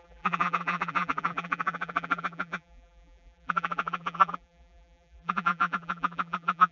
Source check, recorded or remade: remade